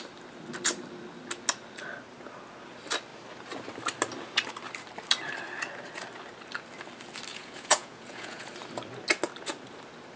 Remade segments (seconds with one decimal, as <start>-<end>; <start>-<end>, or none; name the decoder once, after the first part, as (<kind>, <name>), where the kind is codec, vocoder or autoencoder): 7.3-8.5 (vocoder, Vocos)